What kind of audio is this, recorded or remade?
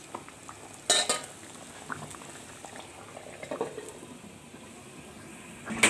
recorded